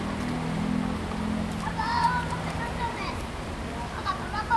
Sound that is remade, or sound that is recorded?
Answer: recorded